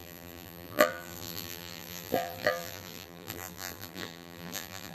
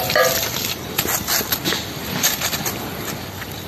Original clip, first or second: second